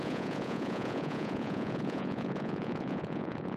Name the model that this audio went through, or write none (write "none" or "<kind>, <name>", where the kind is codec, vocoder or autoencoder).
vocoder, Vocos